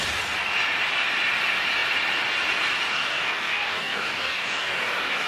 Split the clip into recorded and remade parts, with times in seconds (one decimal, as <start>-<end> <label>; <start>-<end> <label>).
0.0-2.9 recorded; 2.9-5.3 remade